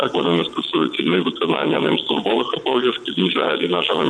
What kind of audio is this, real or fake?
fake